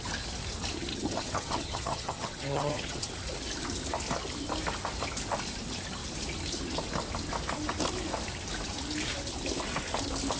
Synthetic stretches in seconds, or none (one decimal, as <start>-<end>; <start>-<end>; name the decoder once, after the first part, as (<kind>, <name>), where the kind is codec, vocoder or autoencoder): 0.9-3.1 (vocoder, HiFi-GAN)